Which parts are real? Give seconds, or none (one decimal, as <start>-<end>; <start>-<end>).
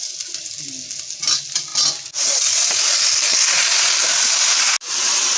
0.0-5.4